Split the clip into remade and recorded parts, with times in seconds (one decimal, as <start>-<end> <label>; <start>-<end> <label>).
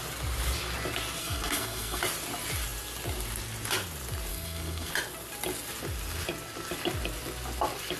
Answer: 0.0-1.2 recorded; 1.2-2.0 remade; 2.0-4.3 recorded; 4.3-4.9 remade; 4.9-8.0 recorded